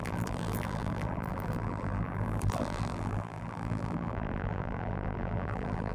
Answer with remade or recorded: remade